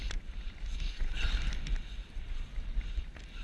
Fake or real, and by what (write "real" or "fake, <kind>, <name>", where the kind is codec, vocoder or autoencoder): real